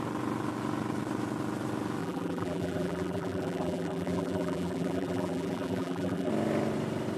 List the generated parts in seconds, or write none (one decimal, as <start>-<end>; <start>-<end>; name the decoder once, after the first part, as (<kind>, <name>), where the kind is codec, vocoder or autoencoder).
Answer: 2.0-6.3 (vocoder, BigVGAN v2)